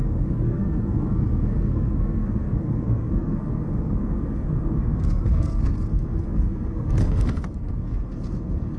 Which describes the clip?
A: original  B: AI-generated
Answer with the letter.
B